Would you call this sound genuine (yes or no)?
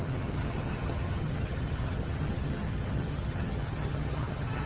no